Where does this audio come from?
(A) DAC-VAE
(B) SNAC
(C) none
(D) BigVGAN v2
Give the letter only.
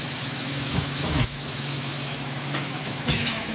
A